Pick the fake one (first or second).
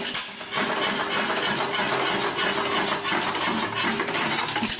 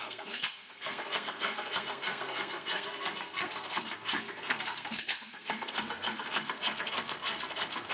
second